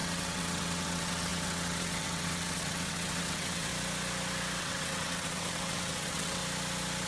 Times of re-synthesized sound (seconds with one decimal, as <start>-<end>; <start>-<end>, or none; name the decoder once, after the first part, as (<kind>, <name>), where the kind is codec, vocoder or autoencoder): 0.0-3.7 (vocoder, WaveNeXt); 4.6-6.4